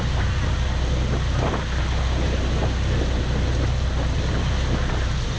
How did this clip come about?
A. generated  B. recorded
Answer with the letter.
B